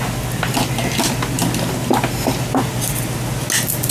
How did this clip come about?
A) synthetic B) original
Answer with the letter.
B